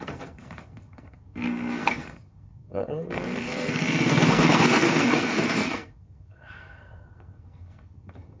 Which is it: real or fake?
fake